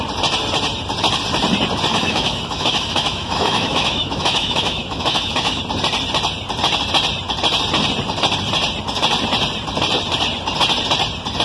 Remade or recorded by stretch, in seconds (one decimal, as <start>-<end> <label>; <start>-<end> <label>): 0.0-1.9 recorded; 1.9-5.6 remade; 5.6-11.4 recorded